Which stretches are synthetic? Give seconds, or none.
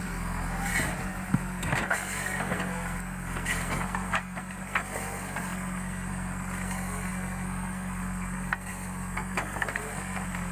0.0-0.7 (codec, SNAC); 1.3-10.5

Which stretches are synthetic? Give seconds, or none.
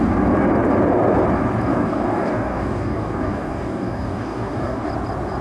1.7-4.9 (codec, DAC)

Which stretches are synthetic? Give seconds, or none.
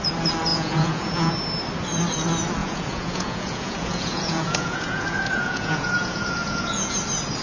0.5-1.3 (vocoder, Vocos); 2.6-7.0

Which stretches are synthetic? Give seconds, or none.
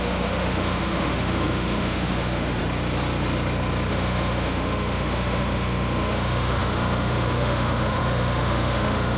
0.0-2.6 (autoencoder, DAC-VAE); 3.9-9.2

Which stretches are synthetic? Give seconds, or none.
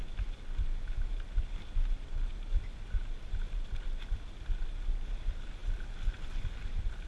none